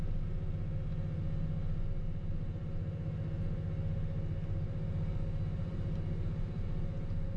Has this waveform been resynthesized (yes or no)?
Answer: no